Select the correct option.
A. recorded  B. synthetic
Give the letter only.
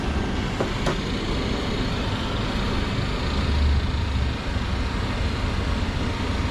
A